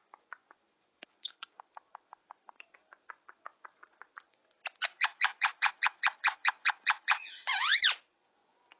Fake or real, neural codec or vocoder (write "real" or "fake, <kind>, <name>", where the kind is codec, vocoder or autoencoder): fake, vocoder, Vocos